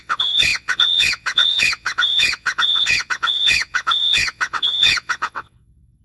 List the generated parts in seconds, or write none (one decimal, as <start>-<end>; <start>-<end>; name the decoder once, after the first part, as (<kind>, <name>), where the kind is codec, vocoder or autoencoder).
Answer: 0.0-6.0 (vocoder, WaveNeXt)

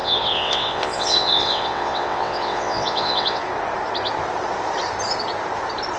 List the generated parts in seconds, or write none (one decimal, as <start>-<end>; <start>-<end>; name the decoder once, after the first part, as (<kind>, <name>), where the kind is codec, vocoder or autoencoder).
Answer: 0.0-3.4 (vocoder, WaveNeXt)

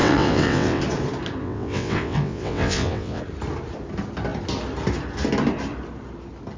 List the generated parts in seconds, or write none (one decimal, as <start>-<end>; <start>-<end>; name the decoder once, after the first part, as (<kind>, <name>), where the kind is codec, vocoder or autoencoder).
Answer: 0.0-0.8 (vocoder, WaveNeXt); 1.4-3.2

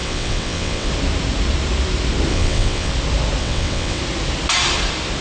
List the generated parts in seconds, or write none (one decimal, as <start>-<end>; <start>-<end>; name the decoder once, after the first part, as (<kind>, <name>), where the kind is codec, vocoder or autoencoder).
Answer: 0.0-0.9 (vocoder, WaveNeXt); 2.3-2.9; 3.4-4.0

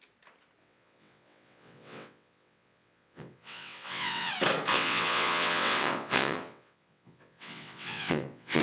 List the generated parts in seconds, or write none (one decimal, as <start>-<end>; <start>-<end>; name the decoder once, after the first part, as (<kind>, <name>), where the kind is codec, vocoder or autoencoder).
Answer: 0.6-4.3 (vocoder, WaveNeXt); 4.7-8.6

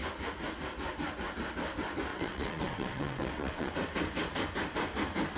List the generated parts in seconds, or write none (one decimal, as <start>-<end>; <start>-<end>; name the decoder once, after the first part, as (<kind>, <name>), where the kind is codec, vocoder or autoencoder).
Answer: 2.1-3.7 (vocoder, WaveNeXt)